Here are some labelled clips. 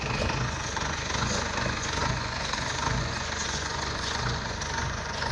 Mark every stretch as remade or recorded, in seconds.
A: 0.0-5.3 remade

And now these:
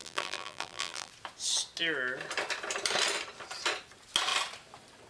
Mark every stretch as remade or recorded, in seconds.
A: 0.0-1.1 remade; 1.1-5.1 recorded

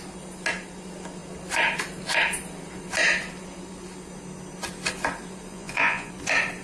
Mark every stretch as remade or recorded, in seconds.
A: 0.0-5.5 recorded; 5.5-6.1 remade; 6.1-6.6 recorded